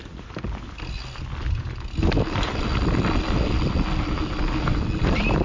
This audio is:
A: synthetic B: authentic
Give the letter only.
B